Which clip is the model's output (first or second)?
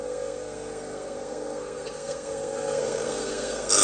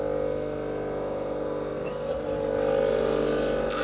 first